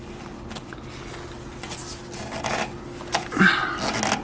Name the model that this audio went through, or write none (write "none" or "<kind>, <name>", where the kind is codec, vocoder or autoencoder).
none